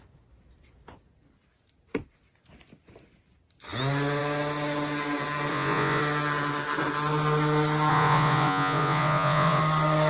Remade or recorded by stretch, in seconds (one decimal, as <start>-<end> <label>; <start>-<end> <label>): 0.0-5.5 recorded; 5.5-6.0 remade; 6.0-7.9 recorded; 7.9-9.6 remade; 9.6-10.1 recorded

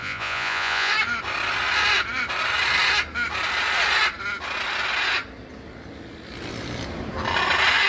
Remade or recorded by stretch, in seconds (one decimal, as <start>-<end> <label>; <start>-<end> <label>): 0.0-0.9 remade; 0.9-7.9 recorded

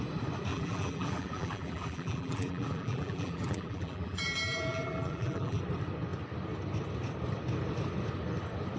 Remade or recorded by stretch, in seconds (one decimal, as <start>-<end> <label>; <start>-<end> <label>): 0.0-0.5 recorded; 0.5-5.6 remade; 5.6-8.8 recorded

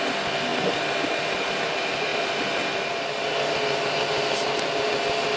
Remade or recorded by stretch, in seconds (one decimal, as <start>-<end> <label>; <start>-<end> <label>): 0.0-5.4 recorded

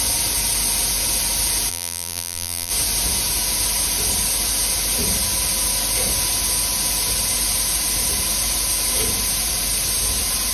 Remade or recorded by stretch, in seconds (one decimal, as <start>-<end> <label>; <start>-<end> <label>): 0.0-1.7 recorded; 1.7-2.7 remade; 2.7-10.5 recorded

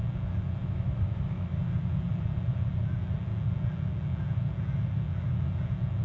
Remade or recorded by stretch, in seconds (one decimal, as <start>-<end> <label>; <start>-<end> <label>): 0.0-0.6 recorded; 0.6-1.5 remade; 1.5-6.0 recorded

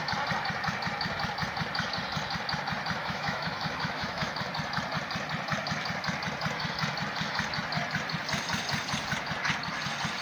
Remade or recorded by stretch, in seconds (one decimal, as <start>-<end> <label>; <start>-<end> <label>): 0.0-3.0 recorded; 3.0-4.5 remade; 4.5-10.2 recorded